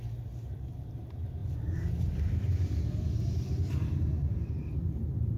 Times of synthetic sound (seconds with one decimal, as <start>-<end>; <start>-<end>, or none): none